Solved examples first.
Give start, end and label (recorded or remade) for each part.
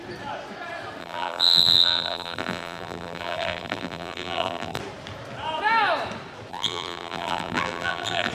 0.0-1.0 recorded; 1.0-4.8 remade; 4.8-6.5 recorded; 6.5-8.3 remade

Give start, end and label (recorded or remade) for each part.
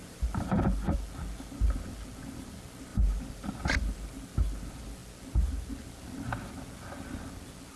0.0-0.6 remade; 0.6-2.9 recorded; 2.9-3.5 remade; 3.5-7.8 recorded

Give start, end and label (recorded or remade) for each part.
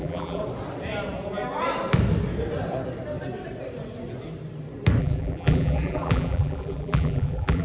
0.0-0.4 remade; 0.4-5.0 recorded; 5.0-7.6 remade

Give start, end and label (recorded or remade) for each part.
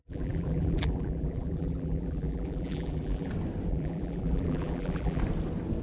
0.0-3.3 remade; 3.3-3.7 recorded; 3.7-5.2 remade; 5.2-5.8 recorded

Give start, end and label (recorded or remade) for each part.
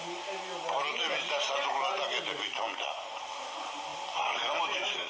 0.0-3.0 recorded; 3.0-3.9 remade; 3.9-4.6 recorded; 4.6-5.1 remade